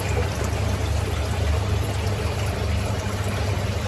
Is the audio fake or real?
fake